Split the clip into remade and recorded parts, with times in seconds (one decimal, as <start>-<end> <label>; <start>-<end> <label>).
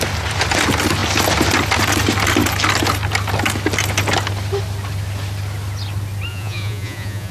0.0-6.3 recorded; 6.3-7.3 remade